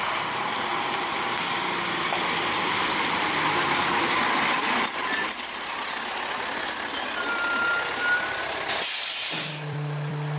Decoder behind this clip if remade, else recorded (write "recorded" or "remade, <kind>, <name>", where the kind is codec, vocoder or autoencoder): remade, vocoder, BigVGAN v2